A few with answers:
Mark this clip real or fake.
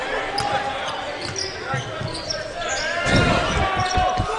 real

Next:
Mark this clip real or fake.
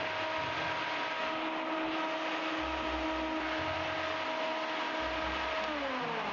real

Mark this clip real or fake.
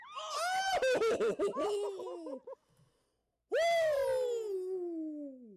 real